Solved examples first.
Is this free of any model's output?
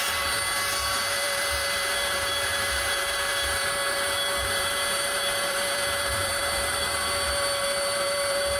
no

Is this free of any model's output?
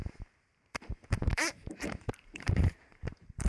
no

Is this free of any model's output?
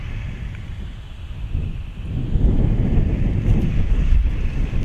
yes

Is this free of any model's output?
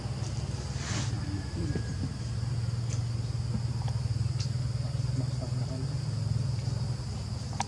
yes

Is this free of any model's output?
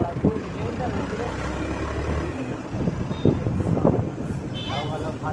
no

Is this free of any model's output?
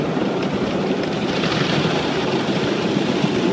no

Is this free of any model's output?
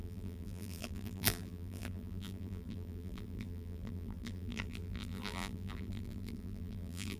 no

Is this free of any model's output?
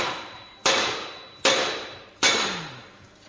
no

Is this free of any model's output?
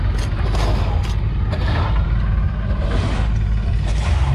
yes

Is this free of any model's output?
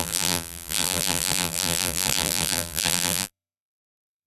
no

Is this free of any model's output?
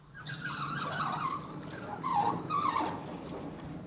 yes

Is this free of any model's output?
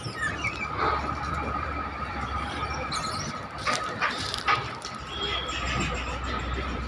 no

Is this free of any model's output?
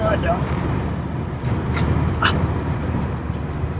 no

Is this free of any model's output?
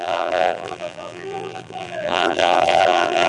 no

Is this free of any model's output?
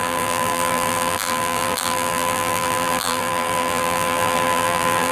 no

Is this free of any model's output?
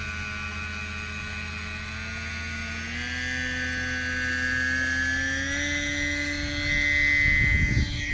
yes